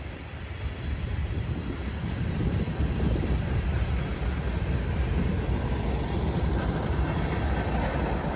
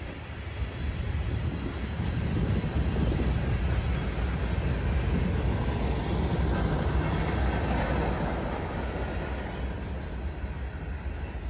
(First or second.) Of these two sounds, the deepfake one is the first